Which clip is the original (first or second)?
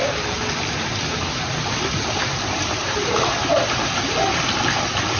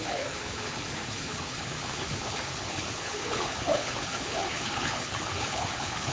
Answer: first